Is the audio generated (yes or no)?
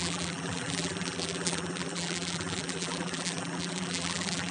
yes